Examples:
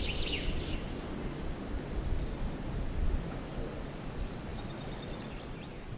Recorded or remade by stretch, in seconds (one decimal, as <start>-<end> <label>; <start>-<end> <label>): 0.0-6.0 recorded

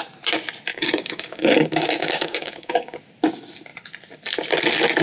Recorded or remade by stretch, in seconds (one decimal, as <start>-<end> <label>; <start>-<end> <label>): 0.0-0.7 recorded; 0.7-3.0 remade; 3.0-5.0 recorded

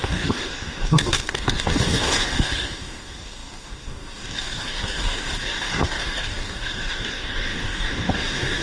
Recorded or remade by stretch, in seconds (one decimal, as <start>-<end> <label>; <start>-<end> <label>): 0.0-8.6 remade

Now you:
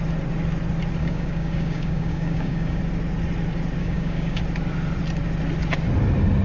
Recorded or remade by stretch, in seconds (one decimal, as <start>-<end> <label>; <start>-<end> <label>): 0.0-1.0 recorded; 1.0-2.8 remade; 2.8-3.8 recorded; 3.8-4.4 remade; 4.4-6.4 recorded

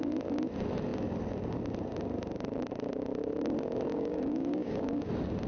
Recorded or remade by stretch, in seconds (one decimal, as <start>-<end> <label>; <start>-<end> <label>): 0.0-3.9 recorded; 3.9-5.1 remade; 5.1-5.5 recorded